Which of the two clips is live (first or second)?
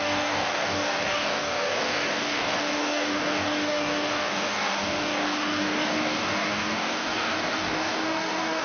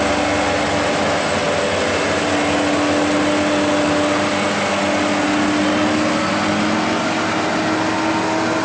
second